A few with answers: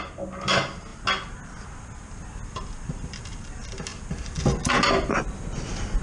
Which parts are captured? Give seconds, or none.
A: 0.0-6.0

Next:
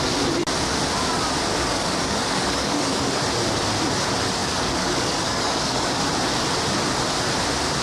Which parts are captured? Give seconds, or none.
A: 0.0-1.5; 3.0-4.4; 6.0-7.8

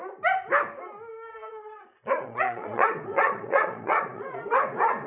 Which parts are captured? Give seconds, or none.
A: 0.0-1.3; 4.4-5.1

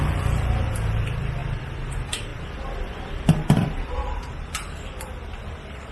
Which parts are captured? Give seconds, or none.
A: 1.4-1.9; 2.3-3.1

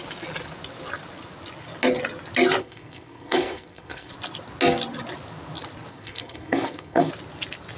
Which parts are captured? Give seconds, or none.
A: 0.0-2.6; 4.1-5.9; 7.1-7.8

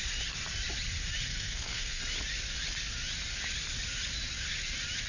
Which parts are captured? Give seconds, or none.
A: 0.0-1.3; 2.0-5.1

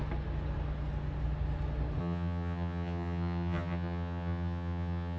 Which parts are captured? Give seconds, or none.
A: 0.0-2.0

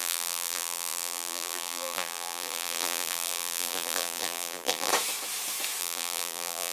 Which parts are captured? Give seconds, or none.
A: 4.9-5.8